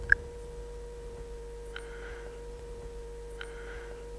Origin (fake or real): real